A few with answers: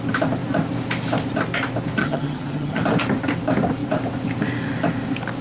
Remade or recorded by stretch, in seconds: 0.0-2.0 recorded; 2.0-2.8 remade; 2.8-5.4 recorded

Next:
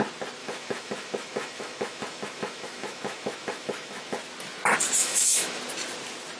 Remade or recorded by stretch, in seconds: 0.0-0.4 recorded; 0.4-4.2 remade; 4.2-5.0 recorded; 5.0-5.6 remade; 5.6-6.4 recorded

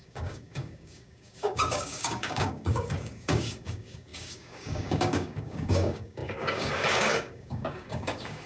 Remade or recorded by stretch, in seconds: 0.0-8.5 remade

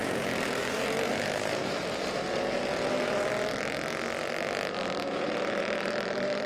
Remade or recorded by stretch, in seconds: 0.0-3.3 remade; 3.3-4.3 recorded; 4.3-6.5 remade